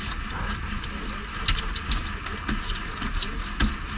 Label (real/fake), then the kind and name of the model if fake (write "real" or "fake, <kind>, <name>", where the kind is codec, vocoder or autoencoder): real